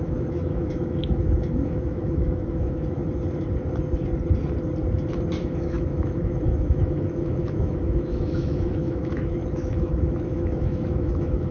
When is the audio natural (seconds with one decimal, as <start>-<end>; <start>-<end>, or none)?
3.0-5.4